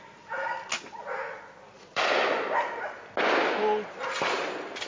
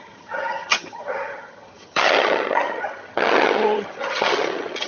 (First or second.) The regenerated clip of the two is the second